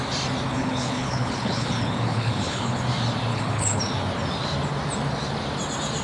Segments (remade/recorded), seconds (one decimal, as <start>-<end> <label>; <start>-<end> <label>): 0.0-0.5 recorded; 0.5-2.8 remade; 2.8-3.3 recorded; 3.3-3.8 remade; 3.8-6.0 recorded